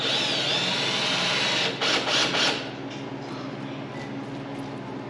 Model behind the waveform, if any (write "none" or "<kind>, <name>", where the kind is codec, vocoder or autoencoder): none